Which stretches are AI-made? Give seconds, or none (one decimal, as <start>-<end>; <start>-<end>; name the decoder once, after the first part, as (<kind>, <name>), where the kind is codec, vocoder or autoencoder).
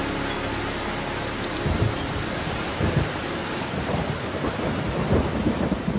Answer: none